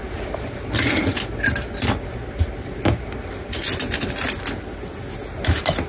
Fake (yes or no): no